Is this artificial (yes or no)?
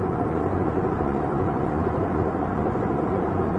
yes